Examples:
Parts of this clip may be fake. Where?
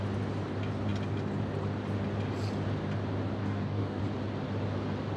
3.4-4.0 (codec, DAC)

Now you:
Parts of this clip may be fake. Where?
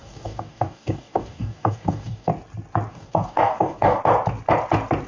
0.0-2.3 (codec, DAC); 2.9-4.0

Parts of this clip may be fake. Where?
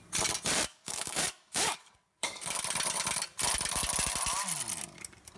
0.7-2.6 (codec, DAC)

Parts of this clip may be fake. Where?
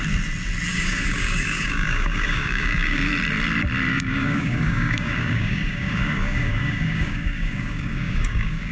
0.7-3.1 (codec, DAC); 3.9-8.7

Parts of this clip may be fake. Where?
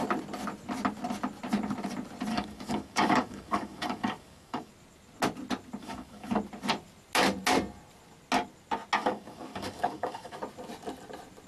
2.3-4.7 (codec, DAC); 5.8-6.4; 9.0-10.4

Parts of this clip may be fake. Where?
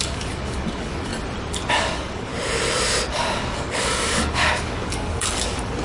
0.0-1.1 (codec, DAC); 1.7-2.3; 3.1-5.8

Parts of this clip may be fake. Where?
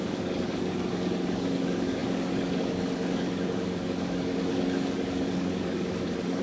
0.0-6.4 (codec, DAC)